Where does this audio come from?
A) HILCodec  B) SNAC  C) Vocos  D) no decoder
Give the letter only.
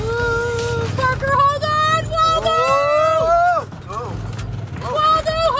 D